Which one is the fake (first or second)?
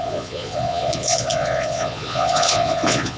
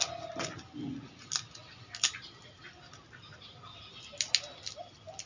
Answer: first